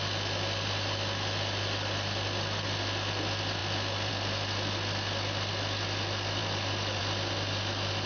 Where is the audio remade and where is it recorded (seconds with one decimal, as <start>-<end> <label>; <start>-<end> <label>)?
0.0-8.1 recorded